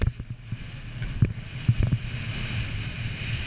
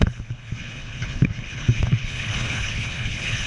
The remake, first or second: second